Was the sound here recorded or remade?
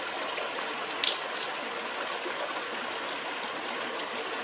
recorded